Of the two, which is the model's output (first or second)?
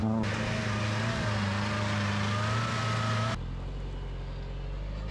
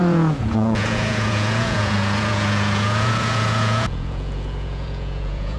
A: second